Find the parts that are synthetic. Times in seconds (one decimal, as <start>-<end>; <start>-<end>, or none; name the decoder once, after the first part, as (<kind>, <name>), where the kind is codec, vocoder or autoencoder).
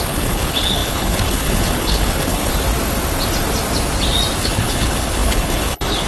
0.0-2.5 (codec, HILCodec); 4.4-6.1